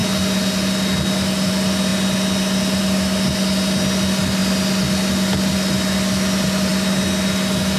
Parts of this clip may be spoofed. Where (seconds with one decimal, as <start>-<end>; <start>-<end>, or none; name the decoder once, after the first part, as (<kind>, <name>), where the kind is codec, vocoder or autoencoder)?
none